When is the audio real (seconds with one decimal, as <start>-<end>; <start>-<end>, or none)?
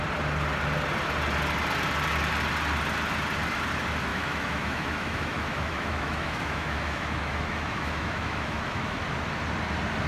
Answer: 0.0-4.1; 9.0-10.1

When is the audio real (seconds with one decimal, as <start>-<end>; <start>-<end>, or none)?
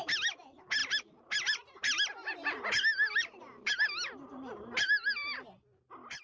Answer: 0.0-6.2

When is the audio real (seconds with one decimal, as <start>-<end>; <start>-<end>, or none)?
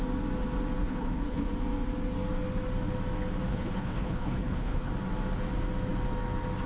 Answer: 0.0-0.8; 1.5-3.5; 4.9-6.7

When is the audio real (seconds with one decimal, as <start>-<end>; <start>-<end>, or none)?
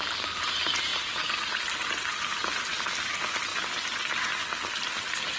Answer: 0.0-5.4